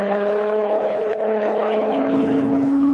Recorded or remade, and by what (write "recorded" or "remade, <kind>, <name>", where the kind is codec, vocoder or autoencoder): remade, codec, HILCodec